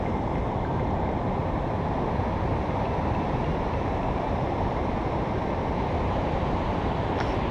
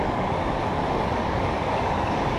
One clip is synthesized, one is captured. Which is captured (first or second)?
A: first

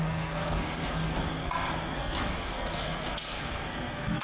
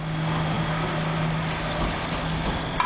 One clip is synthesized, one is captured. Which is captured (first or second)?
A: second